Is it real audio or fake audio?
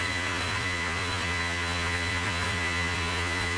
fake